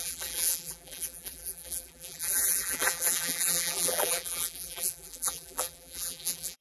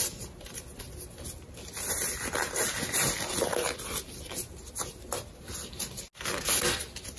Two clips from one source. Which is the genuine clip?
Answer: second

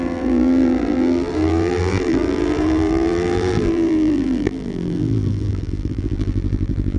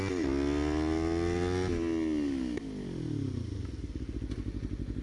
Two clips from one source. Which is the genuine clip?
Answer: second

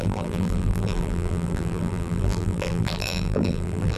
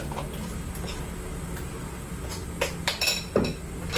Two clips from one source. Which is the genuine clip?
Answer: second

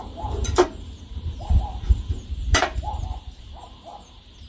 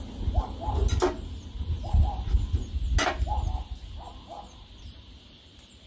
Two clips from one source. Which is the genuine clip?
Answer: second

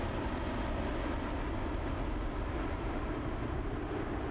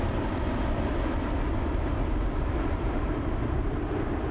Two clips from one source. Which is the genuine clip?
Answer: first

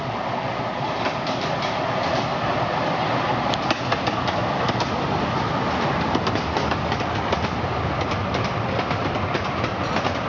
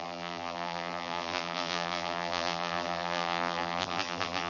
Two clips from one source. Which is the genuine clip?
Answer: first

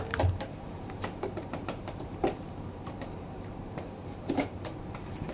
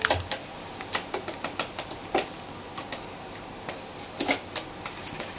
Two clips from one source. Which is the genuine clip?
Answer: second